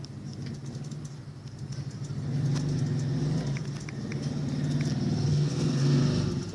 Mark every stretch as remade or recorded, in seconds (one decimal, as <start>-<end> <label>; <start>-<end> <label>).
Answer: 0.0-5.3 recorded; 5.3-6.0 remade; 6.0-6.5 recorded